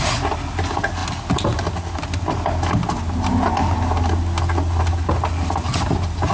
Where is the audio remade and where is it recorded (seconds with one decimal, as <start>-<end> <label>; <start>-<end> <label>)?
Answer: 0.0-6.3 recorded